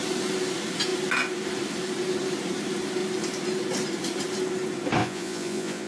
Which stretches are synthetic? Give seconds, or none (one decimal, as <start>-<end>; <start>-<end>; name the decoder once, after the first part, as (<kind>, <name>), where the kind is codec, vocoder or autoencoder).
5.0-5.9 (vocoder, Vocos)